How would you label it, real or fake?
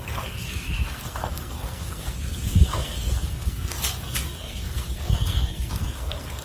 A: fake